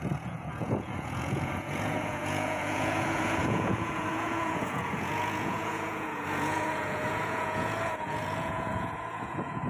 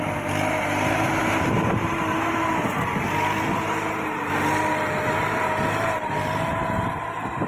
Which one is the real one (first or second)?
second